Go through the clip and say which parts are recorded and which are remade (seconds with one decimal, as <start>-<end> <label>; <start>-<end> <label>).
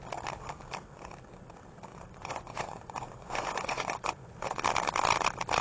0.0-1.9 recorded; 1.9-4.6 remade; 4.6-5.6 recorded